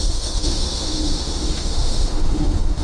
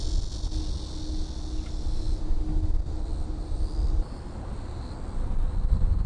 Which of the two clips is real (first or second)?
second